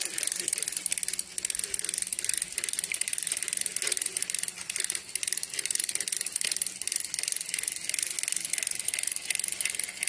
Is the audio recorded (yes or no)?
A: yes